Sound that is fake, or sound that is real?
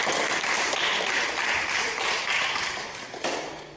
real